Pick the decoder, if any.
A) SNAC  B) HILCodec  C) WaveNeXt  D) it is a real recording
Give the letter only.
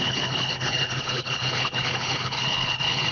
B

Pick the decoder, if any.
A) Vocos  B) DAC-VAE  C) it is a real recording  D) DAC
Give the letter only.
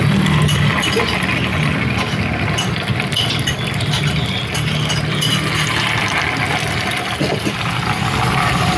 C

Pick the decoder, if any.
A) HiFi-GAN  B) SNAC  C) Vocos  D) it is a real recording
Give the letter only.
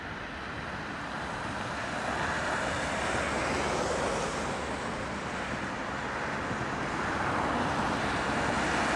D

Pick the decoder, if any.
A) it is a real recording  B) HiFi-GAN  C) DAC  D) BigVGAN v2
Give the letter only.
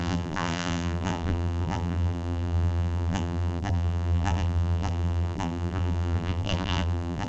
D